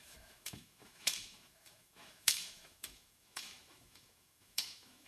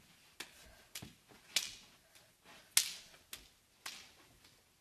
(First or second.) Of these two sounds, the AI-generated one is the first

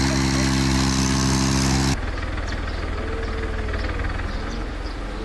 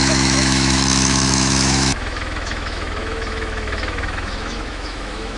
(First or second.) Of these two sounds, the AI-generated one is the second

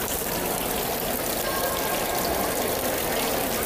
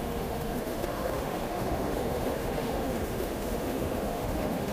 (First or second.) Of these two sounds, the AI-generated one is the second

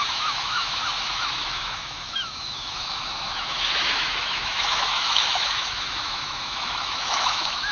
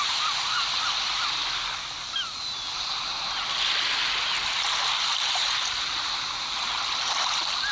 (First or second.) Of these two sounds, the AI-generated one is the first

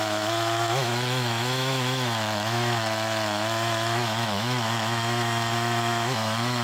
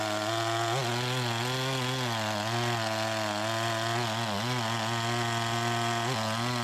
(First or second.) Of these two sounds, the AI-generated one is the first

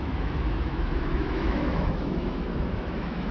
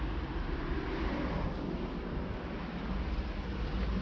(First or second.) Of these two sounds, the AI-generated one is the first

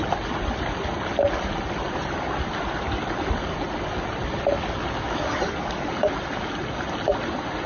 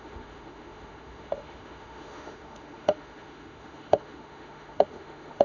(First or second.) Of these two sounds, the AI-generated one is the second